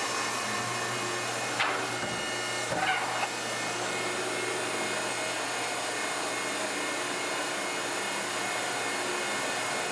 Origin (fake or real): real